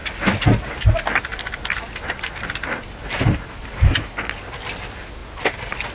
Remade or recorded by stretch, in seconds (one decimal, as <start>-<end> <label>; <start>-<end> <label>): 0.0-1.3 recorded; 1.3-2.9 remade; 2.9-5.2 recorded; 5.2-5.9 remade